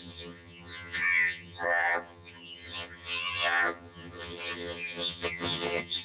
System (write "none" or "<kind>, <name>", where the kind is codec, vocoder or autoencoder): vocoder, HiFi-GAN